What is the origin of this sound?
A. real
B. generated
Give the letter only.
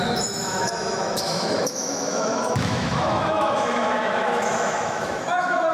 B